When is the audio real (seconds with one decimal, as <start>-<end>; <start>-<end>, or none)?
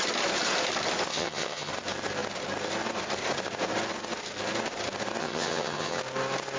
0.0-1.1; 1.7-5.2; 6.0-6.6